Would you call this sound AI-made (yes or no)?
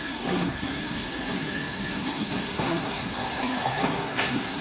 yes